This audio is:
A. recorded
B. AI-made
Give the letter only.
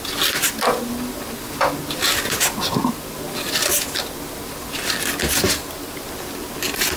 A